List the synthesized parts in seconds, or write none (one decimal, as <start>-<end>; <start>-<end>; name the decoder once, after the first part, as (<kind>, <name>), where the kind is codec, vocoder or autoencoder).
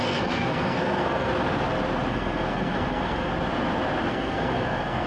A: 0.0-1.3 (codec, SNAC); 2.1-3.3; 4.1-5.1